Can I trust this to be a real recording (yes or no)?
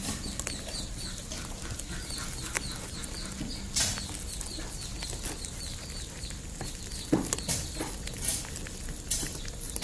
yes